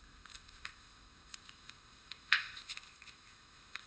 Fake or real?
fake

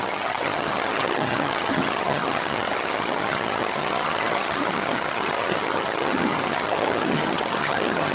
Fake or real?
fake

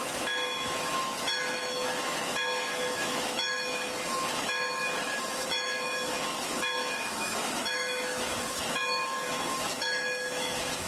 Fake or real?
fake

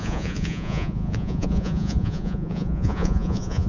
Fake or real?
fake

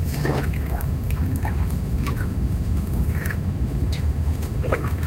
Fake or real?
fake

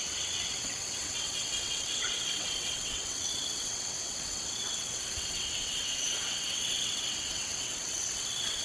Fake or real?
fake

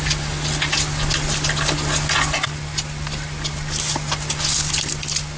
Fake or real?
real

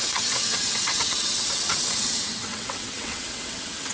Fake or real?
fake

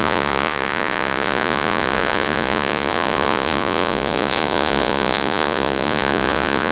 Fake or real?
fake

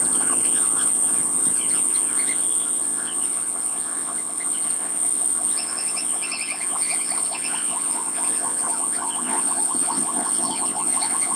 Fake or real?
fake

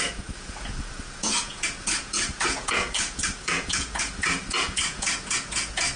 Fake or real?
fake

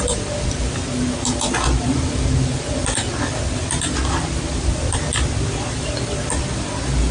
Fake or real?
real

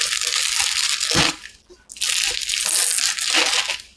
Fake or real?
real